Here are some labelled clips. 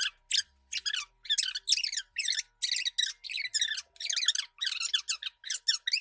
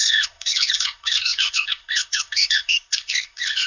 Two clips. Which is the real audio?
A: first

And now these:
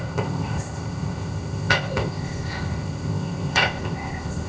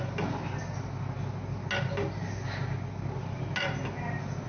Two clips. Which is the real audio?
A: second